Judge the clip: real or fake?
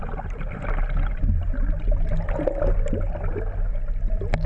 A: real